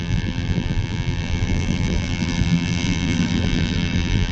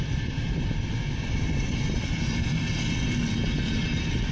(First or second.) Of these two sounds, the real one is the second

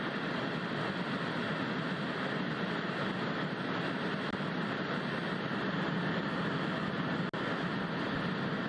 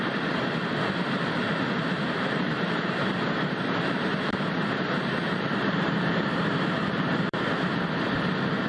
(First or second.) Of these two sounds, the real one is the first